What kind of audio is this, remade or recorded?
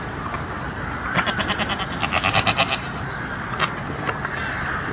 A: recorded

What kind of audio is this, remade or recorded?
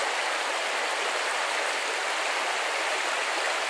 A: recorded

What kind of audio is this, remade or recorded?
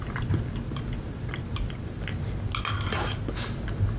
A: recorded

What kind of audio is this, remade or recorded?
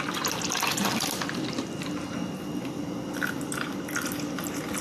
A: recorded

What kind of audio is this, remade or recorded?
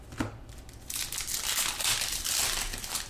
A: recorded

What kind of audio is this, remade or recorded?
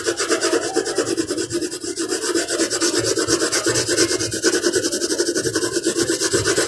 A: recorded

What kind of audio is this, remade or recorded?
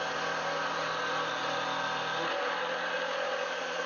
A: recorded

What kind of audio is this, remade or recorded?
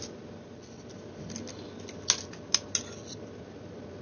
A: recorded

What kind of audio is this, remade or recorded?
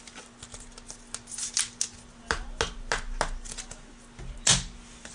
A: recorded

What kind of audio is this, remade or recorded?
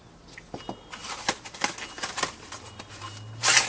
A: recorded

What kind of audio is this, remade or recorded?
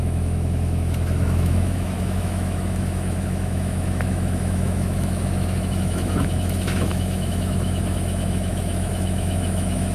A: remade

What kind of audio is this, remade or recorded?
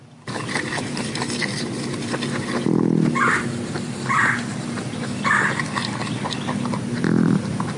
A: remade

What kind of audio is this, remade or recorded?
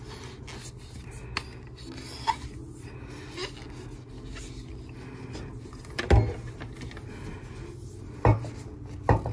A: recorded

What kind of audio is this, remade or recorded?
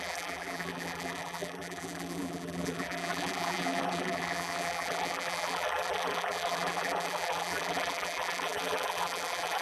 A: remade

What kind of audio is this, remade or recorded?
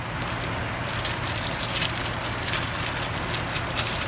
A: recorded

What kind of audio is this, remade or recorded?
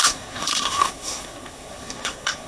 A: remade